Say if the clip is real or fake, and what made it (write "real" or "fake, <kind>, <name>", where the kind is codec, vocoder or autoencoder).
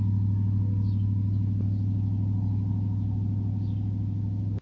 real